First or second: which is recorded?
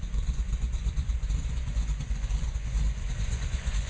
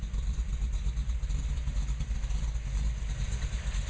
second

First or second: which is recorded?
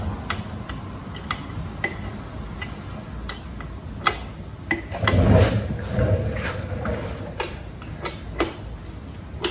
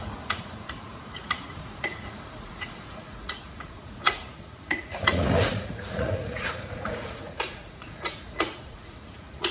first